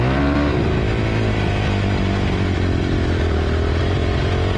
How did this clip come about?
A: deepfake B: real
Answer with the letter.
B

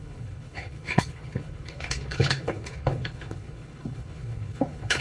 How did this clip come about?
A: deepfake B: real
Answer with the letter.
A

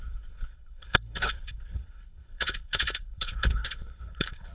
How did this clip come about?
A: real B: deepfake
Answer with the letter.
B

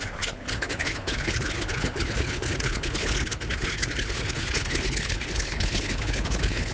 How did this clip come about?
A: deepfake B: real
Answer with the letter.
A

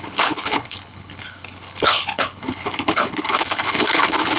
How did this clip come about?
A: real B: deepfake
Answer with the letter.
B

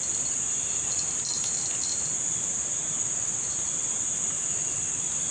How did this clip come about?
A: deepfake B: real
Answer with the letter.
B